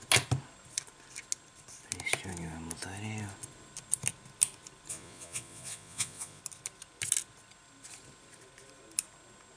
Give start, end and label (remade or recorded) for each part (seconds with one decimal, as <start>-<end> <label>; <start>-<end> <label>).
0.0-4.9 recorded; 4.9-6.4 remade; 6.4-9.6 recorded